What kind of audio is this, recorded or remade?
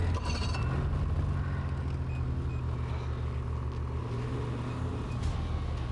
recorded